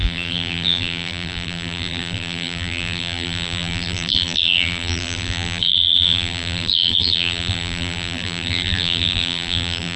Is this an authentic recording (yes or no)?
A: no